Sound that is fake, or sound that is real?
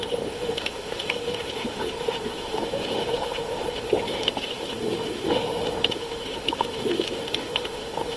fake